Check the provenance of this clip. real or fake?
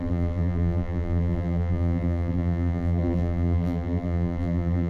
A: fake